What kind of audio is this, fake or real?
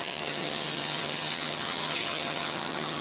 fake